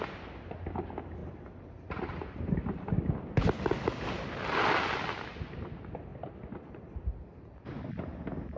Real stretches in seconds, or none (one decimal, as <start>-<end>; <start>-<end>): 0.0-1.2; 3.0-8.6